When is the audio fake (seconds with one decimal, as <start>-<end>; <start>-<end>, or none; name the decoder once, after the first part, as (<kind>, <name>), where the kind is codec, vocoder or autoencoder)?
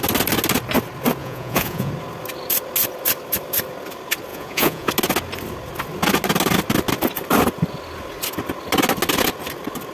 1.2-1.9 (vocoder, Vocos); 4.3-4.9